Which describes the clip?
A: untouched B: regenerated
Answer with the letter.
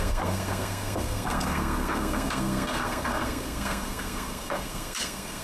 B